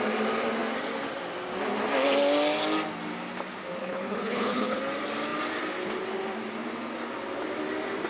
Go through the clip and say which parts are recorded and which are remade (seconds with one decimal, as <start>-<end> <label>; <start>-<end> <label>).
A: 0.0-3.8 recorded; 3.8-4.8 remade; 4.8-8.1 recorded